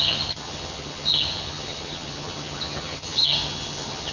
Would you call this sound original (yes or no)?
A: no